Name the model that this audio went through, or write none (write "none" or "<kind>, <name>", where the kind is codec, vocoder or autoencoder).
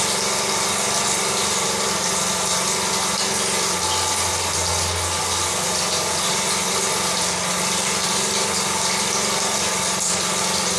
none